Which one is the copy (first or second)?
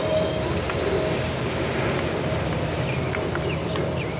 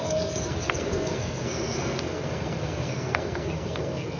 second